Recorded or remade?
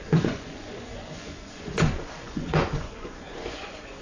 remade